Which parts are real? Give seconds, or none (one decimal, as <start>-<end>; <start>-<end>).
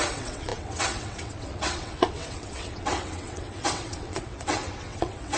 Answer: none